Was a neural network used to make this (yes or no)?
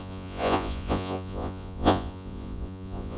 yes